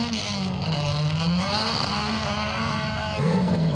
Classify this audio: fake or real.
fake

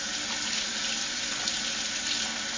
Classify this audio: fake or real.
real